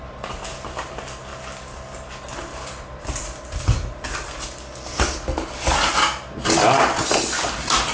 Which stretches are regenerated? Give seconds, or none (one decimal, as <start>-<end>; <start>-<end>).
2.5-4.4